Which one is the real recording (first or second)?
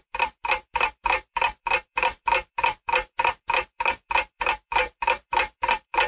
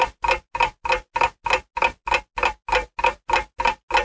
second